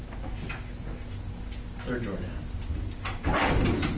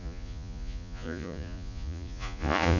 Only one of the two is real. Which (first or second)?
first